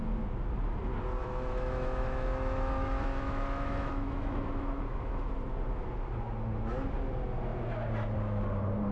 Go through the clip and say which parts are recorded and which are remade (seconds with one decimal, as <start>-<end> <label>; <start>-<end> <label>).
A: 0.0-1.2 recorded; 1.2-5.3 remade; 5.3-8.9 recorded